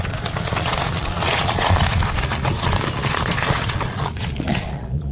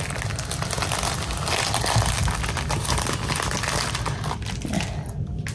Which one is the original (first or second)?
second